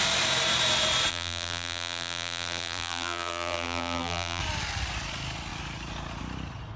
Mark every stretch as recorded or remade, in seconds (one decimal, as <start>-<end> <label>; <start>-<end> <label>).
0.0-1.1 recorded; 1.1-4.4 remade; 4.4-6.8 recorded